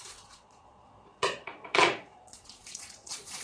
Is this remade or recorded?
remade